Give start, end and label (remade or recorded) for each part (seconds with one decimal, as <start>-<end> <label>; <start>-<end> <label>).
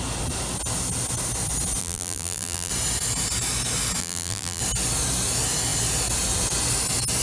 0.0-1.8 recorded; 1.8-2.7 remade; 2.7-4.0 recorded; 4.0-4.6 remade; 4.6-7.2 recorded